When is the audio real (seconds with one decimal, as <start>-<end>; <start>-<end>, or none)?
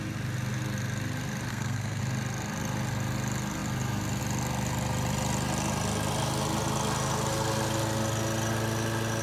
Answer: 0.0-1.5; 2.0-9.2